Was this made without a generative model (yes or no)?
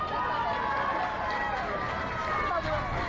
yes